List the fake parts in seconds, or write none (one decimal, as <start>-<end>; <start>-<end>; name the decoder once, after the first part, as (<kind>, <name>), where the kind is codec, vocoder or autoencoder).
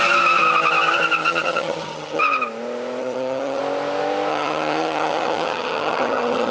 1.2-2.2 (vocoder, HiFi-GAN); 3.0-3.6; 4.3-6.5